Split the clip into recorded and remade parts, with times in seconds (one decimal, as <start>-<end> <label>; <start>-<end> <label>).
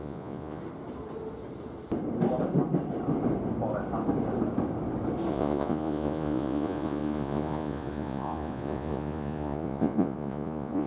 0.0-0.6 remade; 0.6-5.3 recorded; 5.3-10.9 remade